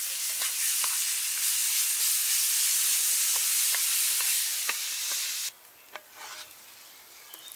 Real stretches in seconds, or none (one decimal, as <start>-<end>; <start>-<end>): 0.0-7.6